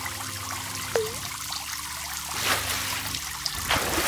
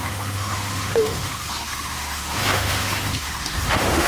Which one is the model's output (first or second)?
second